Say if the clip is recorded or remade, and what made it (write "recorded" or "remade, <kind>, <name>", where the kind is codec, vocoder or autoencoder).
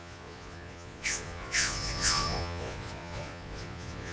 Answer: remade, vocoder, Vocos